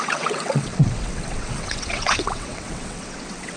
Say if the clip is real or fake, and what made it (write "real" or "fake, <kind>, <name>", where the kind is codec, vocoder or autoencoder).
fake, vocoder, WaveNeXt